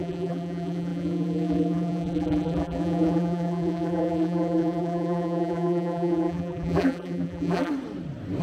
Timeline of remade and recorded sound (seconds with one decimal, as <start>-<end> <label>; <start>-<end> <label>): 0.0-7.7 remade; 7.7-8.4 recorded